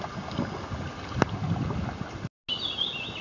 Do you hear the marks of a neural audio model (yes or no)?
no